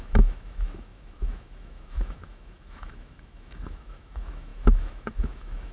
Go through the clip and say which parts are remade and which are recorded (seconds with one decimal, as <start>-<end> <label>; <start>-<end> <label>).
0.0-5.7 remade